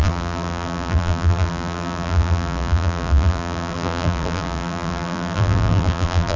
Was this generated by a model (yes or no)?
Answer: yes